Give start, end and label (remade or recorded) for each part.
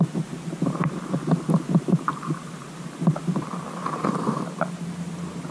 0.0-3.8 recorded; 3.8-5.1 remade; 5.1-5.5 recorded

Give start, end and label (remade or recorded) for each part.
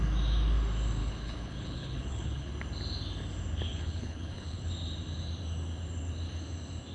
0.0-1.0 recorded; 1.0-2.5 remade; 2.5-3.7 recorded; 3.7-4.7 remade; 4.7-6.9 recorded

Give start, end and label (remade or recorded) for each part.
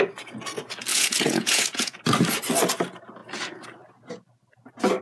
0.0-0.9 recorded; 0.9-2.0 remade; 2.0-5.0 recorded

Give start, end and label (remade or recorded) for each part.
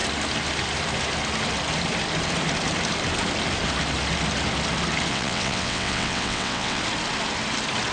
0.0-5.1 recorded; 5.1-6.8 remade; 6.8-7.9 recorded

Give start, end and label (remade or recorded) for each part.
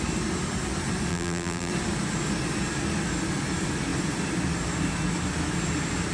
0.0-1.1 recorded; 1.1-1.7 remade; 1.7-6.1 recorded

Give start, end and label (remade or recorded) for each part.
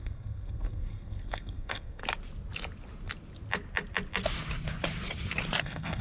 0.0-2.0 remade; 2.0-5.6 recorded; 5.6-6.0 remade